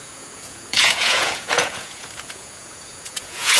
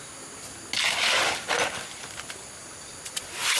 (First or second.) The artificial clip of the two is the first